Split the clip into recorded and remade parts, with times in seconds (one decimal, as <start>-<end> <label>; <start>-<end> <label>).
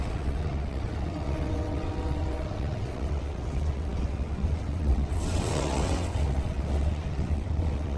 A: 0.0-8.0 remade